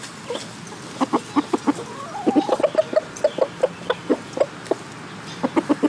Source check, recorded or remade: recorded